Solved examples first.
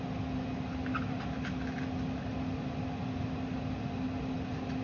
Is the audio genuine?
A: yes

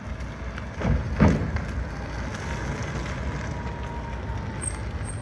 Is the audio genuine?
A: yes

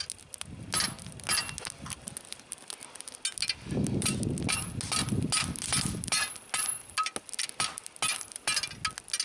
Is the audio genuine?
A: yes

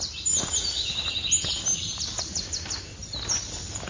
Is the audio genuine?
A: yes